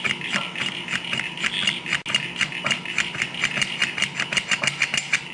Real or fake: real